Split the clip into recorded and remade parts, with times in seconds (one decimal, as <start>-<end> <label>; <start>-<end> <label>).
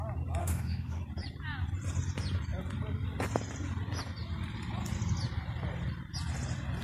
0.0-0.4 recorded; 0.4-1.0 remade; 1.0-6.8 recorded